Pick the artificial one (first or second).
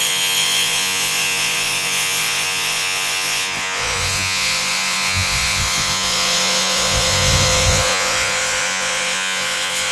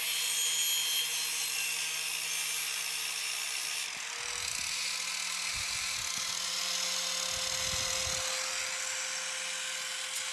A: first